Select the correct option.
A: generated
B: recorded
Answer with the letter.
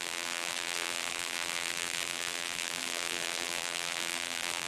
A